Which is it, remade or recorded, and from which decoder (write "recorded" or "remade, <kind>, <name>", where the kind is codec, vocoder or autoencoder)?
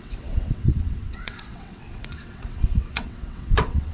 remade, vocoder, WaveNeXt